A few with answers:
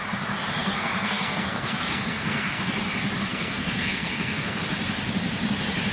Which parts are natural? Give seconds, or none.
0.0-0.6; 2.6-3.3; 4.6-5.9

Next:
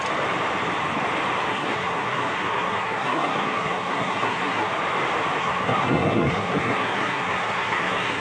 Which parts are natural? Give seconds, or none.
0.0-1.5; 4.7-5.4

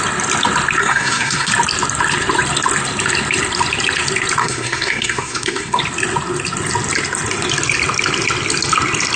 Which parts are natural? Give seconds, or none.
0.0-0.8; 1.5-4.4; 5.8-9.2

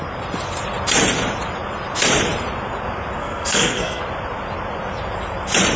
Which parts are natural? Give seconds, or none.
0.0-3.2; 4.0-5.8

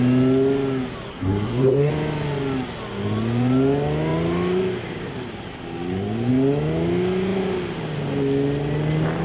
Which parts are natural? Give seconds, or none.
0.0-1.1; 1.9-9.2